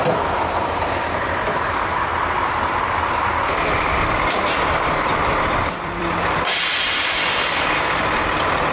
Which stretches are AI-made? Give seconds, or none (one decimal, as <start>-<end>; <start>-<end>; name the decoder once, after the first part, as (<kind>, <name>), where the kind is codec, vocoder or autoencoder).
2.1-4.3 (vocoder, BigVGAN v2); 5.1-6.5